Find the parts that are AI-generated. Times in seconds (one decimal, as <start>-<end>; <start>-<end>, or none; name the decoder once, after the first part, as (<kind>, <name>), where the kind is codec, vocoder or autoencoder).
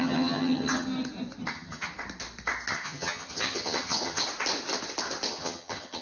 0.0-0.9 (vocoder, HiFi-GAN); 1.5-1.9; 2.7-4.2; 5.3-6.0